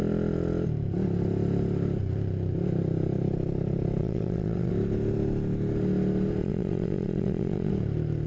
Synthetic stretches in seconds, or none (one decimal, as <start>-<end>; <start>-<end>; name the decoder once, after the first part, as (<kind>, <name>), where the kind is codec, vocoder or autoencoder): 4.0-4.7 (vocoder, WaveNeXt); 6.4-7.7

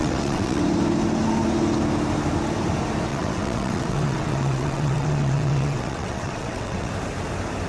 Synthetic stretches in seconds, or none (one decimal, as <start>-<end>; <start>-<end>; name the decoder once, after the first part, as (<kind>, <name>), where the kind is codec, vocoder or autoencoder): 0.0-0.6 (vocoder, WaveNeXt); 3.1-6.9

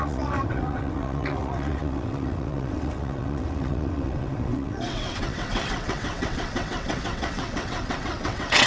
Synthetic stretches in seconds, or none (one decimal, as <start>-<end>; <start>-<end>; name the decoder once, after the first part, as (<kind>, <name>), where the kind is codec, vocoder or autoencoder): 0.0-8.7 (vocoder, WaveNeXt)

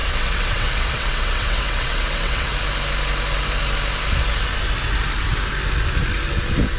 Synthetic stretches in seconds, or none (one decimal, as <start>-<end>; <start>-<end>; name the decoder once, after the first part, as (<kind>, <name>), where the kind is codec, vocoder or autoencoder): 0.0-2.5 (vocoder, WaveNeXt)

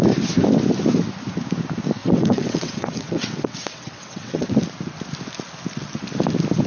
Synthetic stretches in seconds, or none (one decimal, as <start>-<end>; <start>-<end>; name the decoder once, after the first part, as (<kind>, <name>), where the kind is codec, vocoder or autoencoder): 2.0-4.5 (vocoder, WaveNeXt)

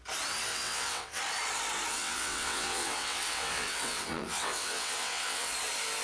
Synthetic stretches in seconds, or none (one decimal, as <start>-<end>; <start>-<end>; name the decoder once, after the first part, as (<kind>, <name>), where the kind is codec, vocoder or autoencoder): 0.5-1.2 (vocoder, WaveNeXt); 1.9-5.5

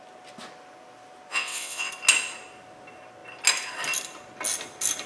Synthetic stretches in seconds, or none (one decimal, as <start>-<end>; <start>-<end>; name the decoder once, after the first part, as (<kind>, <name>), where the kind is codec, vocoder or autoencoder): 1.3-1.9 (vocoder, WaveNeXt)